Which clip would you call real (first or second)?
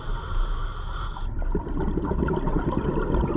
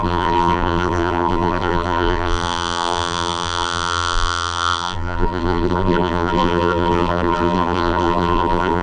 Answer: first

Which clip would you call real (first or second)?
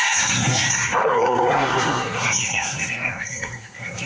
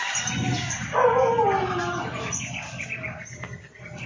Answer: second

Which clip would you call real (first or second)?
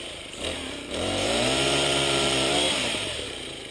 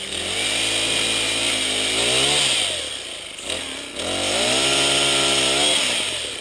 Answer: second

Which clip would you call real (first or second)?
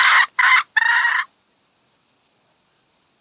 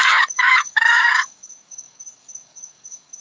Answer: first